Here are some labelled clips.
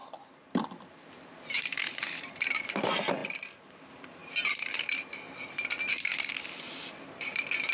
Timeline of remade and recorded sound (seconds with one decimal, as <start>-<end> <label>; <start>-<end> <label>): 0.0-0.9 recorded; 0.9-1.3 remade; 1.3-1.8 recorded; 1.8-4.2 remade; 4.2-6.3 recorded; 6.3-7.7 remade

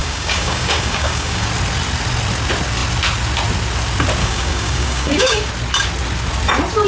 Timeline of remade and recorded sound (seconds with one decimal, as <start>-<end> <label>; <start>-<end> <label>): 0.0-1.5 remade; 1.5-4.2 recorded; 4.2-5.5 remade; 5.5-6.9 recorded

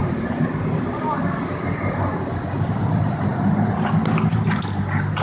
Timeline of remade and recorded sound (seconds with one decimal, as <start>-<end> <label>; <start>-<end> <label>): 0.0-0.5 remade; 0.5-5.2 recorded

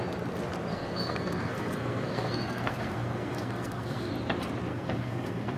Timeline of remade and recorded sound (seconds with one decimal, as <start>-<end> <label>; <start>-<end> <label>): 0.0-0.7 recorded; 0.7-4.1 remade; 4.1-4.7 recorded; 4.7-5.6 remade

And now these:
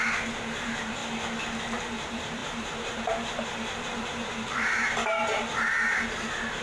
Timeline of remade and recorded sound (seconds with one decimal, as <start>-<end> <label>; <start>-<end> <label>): 0.0-1.0 remade; 1.0-1.6 recorded; 1.6-6.6 remade

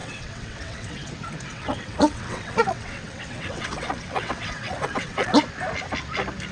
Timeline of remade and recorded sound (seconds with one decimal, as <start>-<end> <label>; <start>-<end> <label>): 0.0-1.1 remade; 1.1-1.5 recorded; 1.5-5.4 remade; 5.4-6.5 recorded

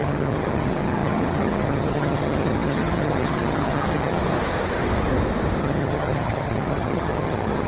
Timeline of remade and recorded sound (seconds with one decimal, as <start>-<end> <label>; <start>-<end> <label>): 0.0-4.2 remade; 4.2-5.6 recorded; 5.6-7.7 remade

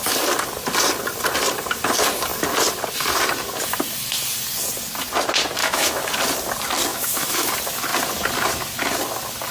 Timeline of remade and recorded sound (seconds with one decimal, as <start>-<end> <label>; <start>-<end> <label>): 0.0-5.6 recorded; 5.6-6.1 remade; 6.1-6.9 recorded; 6.9-7.5 remade; 7.5-9.5 recorded